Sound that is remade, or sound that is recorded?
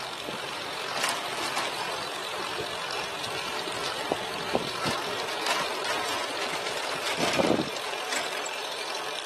remade